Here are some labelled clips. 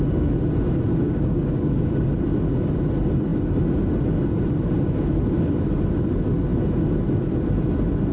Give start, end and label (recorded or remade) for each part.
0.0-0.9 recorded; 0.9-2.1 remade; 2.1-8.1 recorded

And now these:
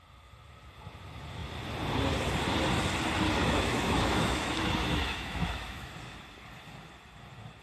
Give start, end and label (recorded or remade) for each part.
0.0-3.4 recorded; 3.4-5.9 remade; 5.9-7.6 recorded

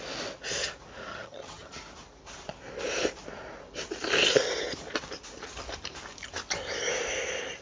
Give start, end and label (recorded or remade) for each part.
0.0-1.1 recorded; 1.1-1.7 remade; 1.7-7.6 recorded